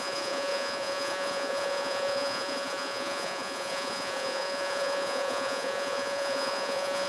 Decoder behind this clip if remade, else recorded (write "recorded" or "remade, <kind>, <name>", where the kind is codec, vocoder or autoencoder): remade, vocoder, Vocos